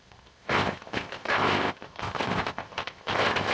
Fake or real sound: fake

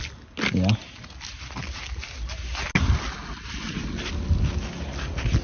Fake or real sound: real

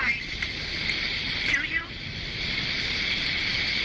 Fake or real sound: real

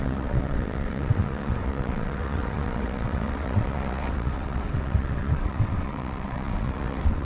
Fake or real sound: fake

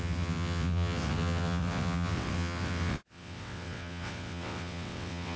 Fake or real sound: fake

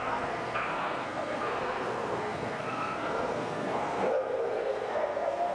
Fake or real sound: fake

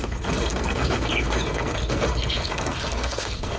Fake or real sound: fake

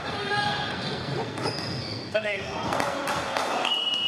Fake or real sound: fake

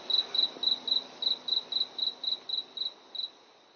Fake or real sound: real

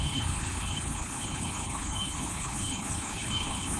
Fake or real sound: fake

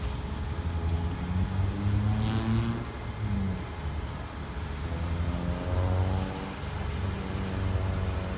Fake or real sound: real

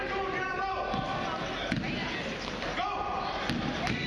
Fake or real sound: real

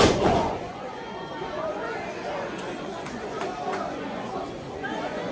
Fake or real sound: fake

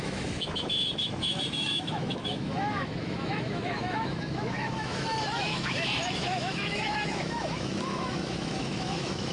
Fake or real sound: fake